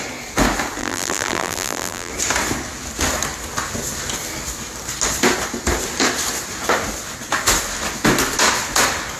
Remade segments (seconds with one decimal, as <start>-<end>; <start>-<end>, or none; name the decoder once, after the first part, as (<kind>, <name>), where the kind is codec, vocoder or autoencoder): 0.8-2.1 (vocoder, BigVGAN v2)